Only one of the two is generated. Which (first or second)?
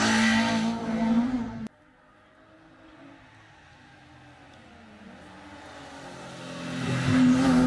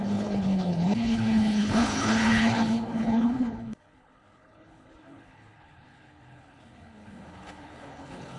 second